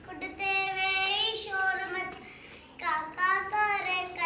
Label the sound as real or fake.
real